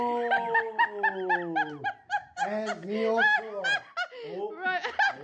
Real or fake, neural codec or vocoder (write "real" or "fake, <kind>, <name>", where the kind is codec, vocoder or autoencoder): real